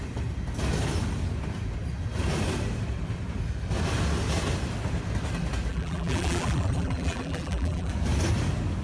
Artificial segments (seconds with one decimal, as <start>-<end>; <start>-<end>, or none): 5.7-7.9